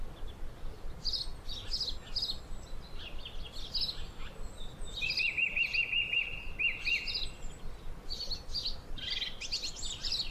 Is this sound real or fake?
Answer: real